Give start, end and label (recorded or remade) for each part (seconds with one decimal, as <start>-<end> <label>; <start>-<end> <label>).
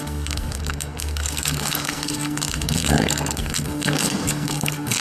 0.0-5.0 remade